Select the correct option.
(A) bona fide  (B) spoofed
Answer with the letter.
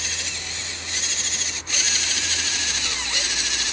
A